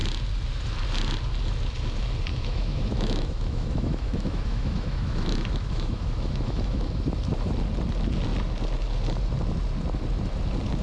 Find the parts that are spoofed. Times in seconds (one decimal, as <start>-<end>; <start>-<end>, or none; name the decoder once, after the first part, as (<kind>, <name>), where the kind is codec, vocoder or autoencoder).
2.3-7.0 (autoencoder, DAC-VAE)

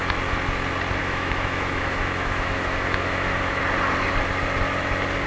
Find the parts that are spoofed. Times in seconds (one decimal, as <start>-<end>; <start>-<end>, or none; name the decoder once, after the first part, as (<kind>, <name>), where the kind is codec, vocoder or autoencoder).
1.0-3.6 (autoencoder, DAC-VAE)